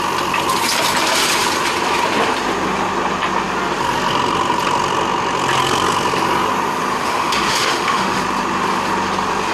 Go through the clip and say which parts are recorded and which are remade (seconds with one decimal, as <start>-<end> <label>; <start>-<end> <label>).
0.0-7.0 recorded; 7.0-8.2 remade; 8.2-9.5 recorded